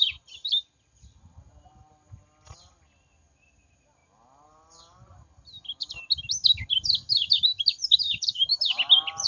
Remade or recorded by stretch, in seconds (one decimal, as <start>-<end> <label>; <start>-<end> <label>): 0.0-9.3 recorded